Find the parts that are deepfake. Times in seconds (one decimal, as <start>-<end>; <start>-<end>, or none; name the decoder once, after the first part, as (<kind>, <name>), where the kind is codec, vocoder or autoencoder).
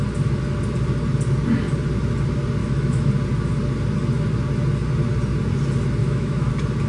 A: 2.6-3.1 (autoencoder, DAC-VAE); 6.0-6.5